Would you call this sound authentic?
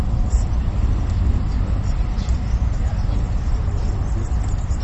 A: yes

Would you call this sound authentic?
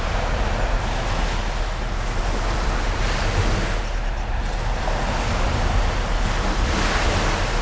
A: yes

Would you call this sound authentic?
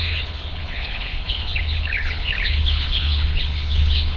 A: no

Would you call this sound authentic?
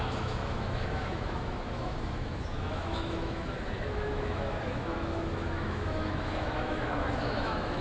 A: no